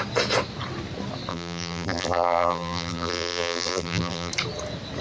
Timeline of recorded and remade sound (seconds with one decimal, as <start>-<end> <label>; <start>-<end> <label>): 0.0-1.3 recorded; 1.3-4.3 remade; 4.3-5.0 recorded